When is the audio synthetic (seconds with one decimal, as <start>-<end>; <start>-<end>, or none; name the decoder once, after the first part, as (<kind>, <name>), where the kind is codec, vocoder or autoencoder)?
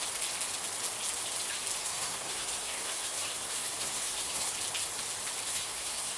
1.8-4.5 (codec, SNAC); 5.5-6.2